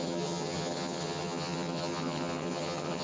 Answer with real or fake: fake